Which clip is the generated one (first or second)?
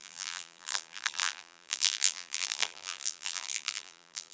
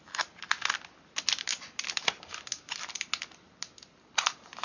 first